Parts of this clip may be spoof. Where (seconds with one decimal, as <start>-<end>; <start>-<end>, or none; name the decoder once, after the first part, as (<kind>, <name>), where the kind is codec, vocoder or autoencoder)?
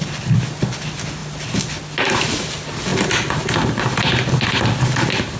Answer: none